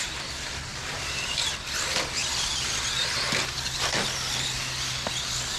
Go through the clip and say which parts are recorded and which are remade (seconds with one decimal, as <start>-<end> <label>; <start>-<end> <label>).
0.0-0.7 recorded; 0.7-1.4 remade; 1.4-5.6 recorded

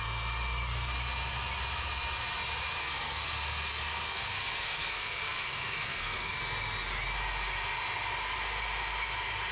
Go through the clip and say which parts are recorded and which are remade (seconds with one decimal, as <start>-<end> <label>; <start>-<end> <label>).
0.0-2.8 recorded; 2.8-3.3 remade; 3.3-3.7 recorded; 3.7-6.4 remade; 6.4-9.5 recorded

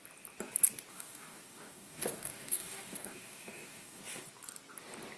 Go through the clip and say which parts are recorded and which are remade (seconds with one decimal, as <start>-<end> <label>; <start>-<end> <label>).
0.0-0.9 recorded; 0.9-4.0 remade; 4.0-5.2 recorded

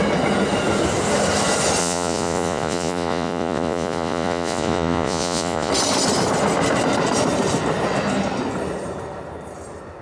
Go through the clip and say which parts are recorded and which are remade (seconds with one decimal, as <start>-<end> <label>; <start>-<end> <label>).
0.0-1.8 recorded; 1.8-5.7 remade; 5.7-10.0 recorded

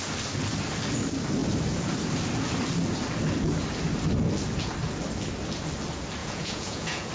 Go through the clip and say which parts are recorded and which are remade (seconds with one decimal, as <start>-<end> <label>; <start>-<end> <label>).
0.0-6.2 recorded; 6.2-7.1 remade

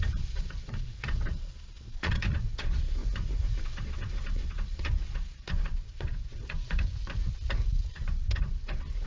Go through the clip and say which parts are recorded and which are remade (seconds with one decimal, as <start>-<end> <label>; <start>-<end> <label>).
0.0-3.0 remade; 3.0-3.6 recorded; 3.6-6.9 remade; 6.9-7.9 recorded; 7.9-9.1 remade

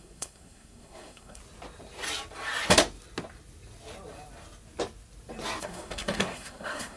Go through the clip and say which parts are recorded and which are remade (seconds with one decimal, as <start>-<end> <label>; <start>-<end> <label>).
0.0-1.4 remade; 1.4-5.6 recorded; 5.6-7.0 remade

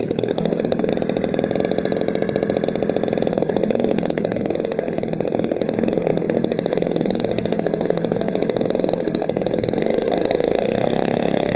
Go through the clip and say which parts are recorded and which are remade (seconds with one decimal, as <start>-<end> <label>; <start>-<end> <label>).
0.0-0.9 remade; 0.9-3.3 recorded; 3.3-11.6 remade